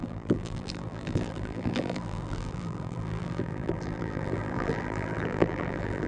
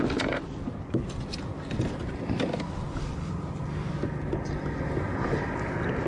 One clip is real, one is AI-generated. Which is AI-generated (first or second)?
first